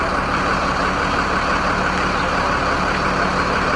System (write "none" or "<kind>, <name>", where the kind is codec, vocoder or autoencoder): none